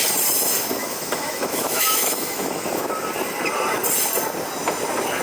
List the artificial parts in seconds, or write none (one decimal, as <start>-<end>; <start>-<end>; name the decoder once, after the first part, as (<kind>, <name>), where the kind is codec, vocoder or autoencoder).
0.8-2.9 (autoencoder, DAC-VAE)